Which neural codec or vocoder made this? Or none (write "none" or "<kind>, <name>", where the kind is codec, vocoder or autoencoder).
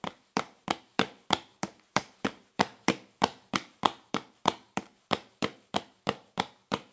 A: vocoder, BigVGAN v2